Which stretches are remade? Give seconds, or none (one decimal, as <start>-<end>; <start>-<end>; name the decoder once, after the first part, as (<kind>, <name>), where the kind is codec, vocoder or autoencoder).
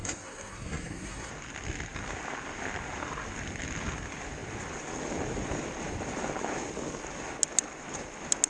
0.0-1.3 (codec, SNAC)